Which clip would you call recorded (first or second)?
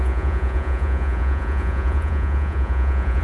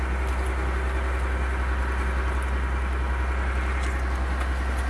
second